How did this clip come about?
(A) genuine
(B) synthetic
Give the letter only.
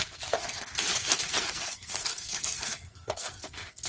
B